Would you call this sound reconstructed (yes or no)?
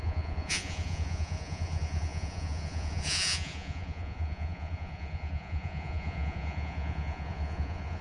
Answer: yes